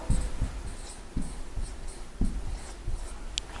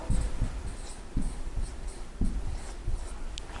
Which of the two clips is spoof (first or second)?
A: second